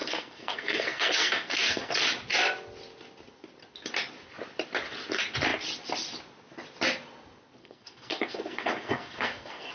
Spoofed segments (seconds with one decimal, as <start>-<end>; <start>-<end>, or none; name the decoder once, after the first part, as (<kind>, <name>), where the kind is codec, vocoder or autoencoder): 0.0-1.9 (codec, SNAC); 7.6-9.7